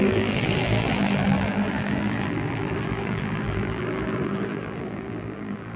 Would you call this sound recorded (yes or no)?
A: no